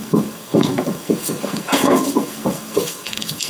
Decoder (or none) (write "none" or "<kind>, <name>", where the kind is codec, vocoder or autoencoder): codec, SNAC